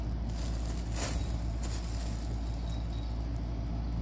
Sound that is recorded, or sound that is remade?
recorded